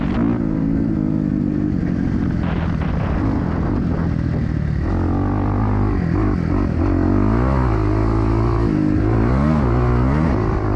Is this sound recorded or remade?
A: recorded